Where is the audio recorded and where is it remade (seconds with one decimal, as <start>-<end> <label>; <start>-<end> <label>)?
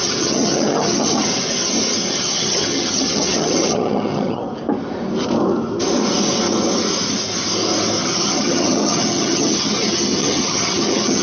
0.0-1.3 remade; 1.3-2.1 recorded; 2.1-4.4 remade; 4.4-8.0 recorded; 8.0-11.2 remade